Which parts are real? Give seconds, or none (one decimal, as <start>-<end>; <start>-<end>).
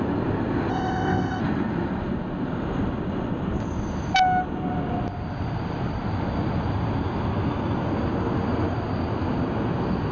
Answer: 0.0-0.7; 1.4-10.1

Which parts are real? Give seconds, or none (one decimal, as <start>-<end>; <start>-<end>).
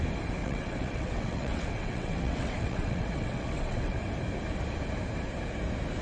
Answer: 0.0-0.4; 4.0-6.0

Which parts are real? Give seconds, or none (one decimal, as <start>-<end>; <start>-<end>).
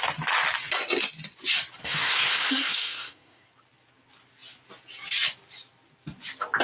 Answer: 0.0-1.8; 3.5-6.6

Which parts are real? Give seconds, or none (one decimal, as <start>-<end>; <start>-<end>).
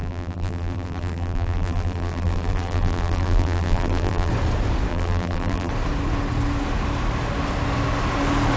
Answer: 4.3-4.9; 5.7-8.6